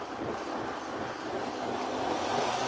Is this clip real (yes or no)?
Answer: yes